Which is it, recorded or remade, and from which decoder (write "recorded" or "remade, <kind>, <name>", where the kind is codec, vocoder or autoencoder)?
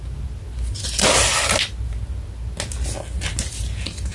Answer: recorded